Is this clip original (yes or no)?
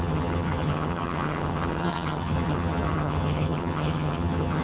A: no